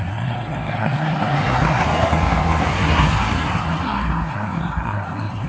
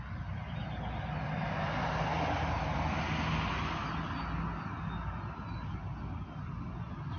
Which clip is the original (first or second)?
second